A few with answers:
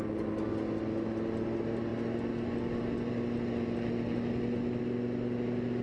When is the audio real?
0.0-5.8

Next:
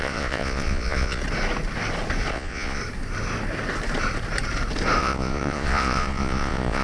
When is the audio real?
1.2-2.3; 2.8-5.0

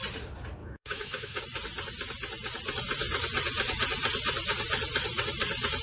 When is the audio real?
0.0-0.6; 1.4-5.8

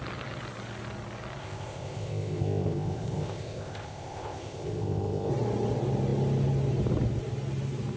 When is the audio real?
0.0-1.4; 5.3-8.0

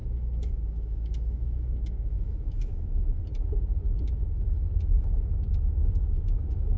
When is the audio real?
3.2-3.9

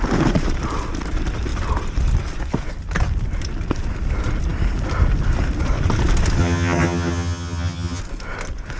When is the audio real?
0.0-6.4; 8.0-8.8

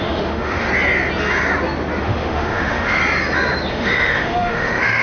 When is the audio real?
0.7-2.0; 3.0-3.7